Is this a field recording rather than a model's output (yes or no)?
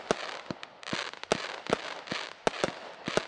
yes